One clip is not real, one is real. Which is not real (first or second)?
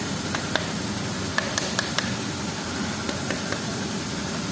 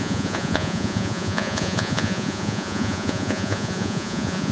second